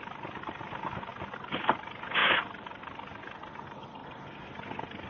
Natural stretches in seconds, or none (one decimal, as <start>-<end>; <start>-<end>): 0.0-2.2; 2.7-5.1